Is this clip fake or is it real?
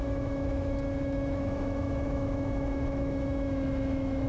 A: fake